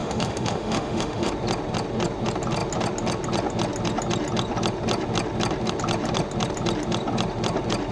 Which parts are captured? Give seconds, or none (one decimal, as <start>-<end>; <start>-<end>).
1.3-7.9